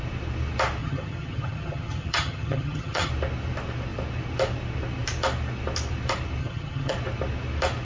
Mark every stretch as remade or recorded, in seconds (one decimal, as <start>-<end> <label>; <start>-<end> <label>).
0.0-0.8 recorded; 0.8-3.1 remade; 3.1-6.4 recorded; 6.4-6.9 remade; 6.9-7.8 recorded